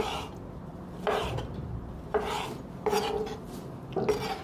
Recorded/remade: recorded